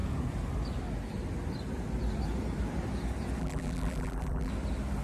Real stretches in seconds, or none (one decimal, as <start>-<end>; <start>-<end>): 0.0-3.4; 4.5-5.0